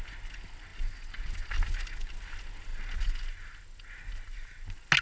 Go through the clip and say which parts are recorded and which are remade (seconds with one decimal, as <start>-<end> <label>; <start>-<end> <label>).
0.0-5.0 recorded